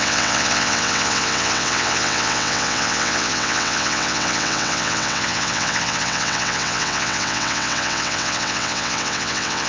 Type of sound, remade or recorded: remade